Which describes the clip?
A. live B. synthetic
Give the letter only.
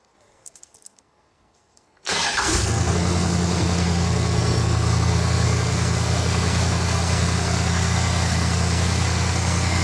B